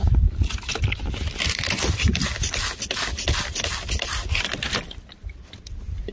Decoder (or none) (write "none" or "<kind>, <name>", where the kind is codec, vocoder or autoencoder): none